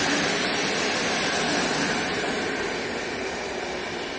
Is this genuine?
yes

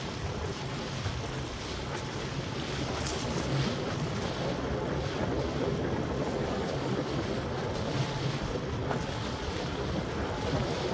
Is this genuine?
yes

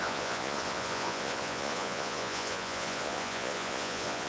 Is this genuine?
no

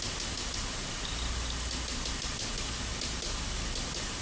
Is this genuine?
yes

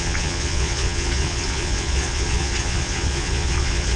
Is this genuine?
no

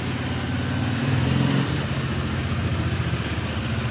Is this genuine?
yes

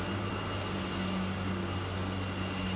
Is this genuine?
yes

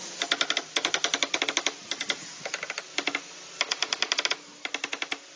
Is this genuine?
yes